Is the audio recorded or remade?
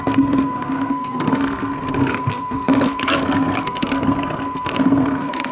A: remade